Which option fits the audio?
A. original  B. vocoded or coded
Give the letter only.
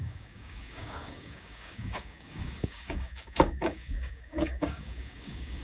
B